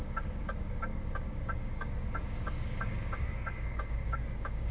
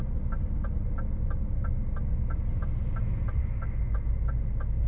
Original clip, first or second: second